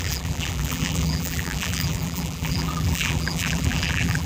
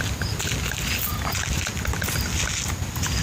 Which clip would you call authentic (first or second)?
second